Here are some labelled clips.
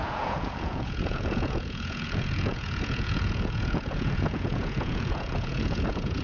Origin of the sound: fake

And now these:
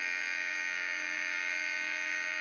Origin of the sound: fake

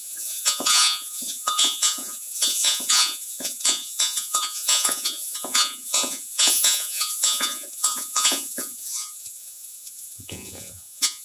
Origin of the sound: fake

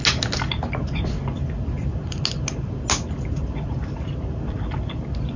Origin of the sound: real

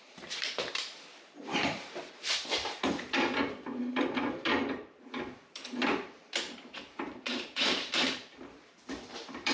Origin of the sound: fake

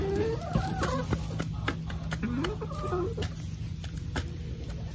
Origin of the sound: real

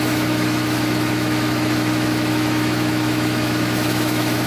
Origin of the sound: fake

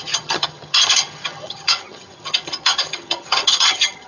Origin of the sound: fake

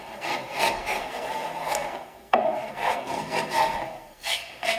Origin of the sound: fake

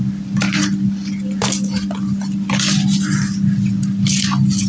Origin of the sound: real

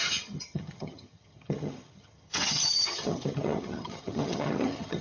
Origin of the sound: fake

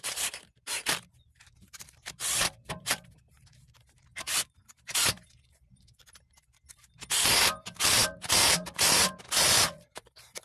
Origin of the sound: fake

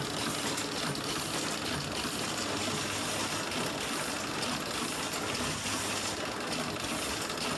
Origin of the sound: real